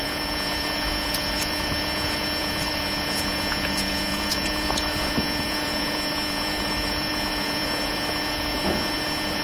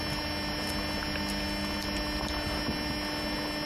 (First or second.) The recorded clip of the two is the second